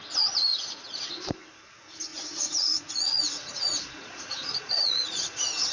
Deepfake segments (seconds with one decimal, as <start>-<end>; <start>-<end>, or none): 0.5-1.1; 2.1-5.7